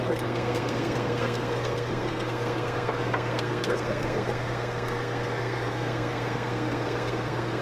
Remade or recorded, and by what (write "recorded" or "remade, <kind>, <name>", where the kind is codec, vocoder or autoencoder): remade, codec, SNAC